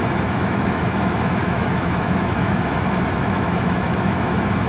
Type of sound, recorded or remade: remade